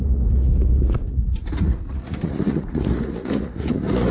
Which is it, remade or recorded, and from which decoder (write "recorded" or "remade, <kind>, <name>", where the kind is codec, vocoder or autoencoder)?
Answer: remade, vocoder, Vocos